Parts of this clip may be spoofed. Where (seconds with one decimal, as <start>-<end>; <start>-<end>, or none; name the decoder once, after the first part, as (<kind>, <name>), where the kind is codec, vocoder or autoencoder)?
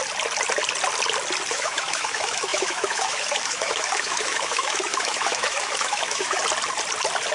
1.5-6.4 (autoencoder, DAC-VAE)